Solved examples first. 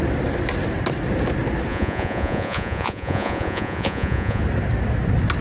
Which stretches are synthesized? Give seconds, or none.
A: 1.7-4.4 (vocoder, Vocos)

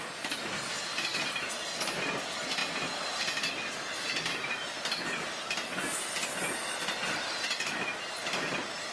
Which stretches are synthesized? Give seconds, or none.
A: none

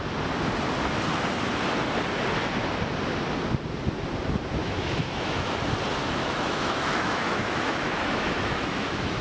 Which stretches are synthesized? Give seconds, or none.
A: 4.6-5.5 (autoencoder, DAC-VAE); 6.2-9.2

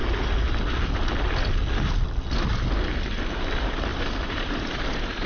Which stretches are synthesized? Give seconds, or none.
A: 3.9-5.3 (vocoder, BigVGAN v2)

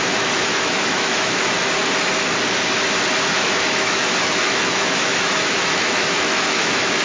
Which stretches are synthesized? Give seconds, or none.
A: 0.0-1.6 (autoencoder, DAC-VAE); 3.3-7.0

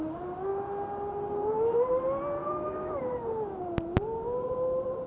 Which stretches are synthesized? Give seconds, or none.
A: 2.4-3.0 (autoencoder, DAC-VAE)

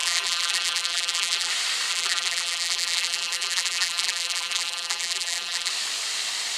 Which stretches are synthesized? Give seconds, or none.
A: 0.0-1.5 (vocoder, BigVGAN v2); 1.9-5.7